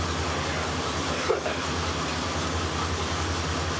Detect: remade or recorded recorded